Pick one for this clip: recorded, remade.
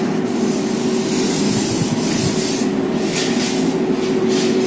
recorded